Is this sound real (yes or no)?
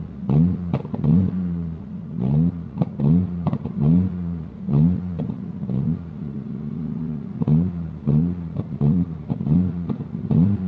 no